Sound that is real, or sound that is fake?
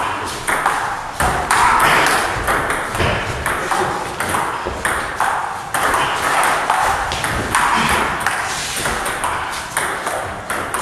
real